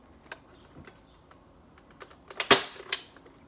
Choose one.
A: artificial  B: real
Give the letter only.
B